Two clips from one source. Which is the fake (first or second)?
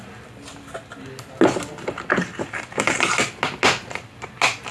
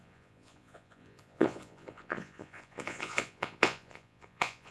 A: second